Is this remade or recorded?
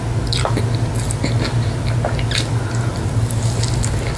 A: recorded